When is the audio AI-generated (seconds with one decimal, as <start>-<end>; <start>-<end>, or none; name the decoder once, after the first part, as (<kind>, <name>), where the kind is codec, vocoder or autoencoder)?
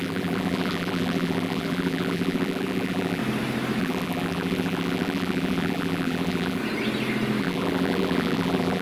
0.0-3.2 (vocoder, BigVGAN v2); 3.8-6.6; 7.4-8.8